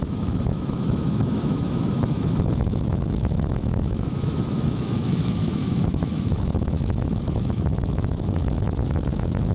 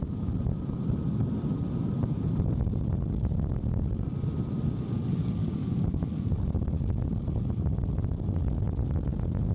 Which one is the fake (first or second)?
first